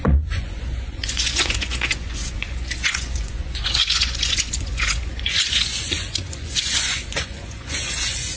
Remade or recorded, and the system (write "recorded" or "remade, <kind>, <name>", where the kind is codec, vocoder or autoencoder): remade, vocoder, Vocos